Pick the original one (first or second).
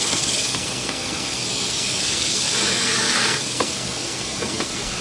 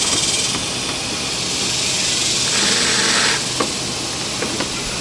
second